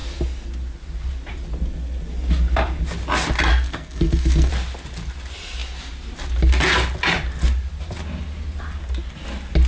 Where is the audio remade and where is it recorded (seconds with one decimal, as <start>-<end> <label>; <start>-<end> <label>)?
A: 0.0-3.5 recorded; 3.5-4.5 remade; 4.5-9.7 recorded